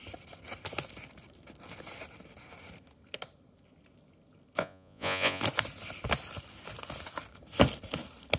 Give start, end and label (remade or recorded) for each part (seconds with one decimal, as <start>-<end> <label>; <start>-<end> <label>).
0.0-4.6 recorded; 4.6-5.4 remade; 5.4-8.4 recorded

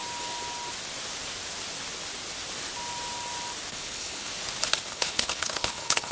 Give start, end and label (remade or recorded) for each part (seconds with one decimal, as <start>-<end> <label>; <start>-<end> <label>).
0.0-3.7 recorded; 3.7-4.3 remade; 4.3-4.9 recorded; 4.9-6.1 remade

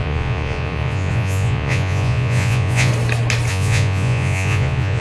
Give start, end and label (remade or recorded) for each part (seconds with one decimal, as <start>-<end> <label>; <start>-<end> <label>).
0.0-2.9 remade; 2.9-3.5 recorded; 3.5-5.0 remade